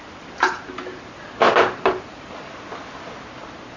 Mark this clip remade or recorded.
recorded